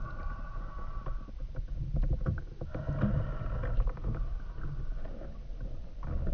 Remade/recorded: recorded